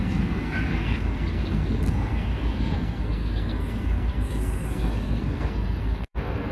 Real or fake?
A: fake